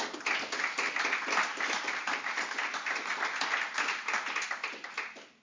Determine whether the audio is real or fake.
real